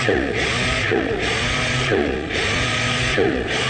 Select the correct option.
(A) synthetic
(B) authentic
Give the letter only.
A